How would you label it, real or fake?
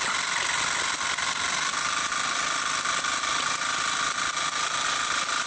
real